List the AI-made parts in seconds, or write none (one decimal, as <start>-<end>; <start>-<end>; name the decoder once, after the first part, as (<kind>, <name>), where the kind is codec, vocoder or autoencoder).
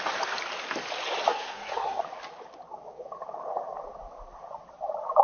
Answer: 1.3-2.0 (codec, SNAC)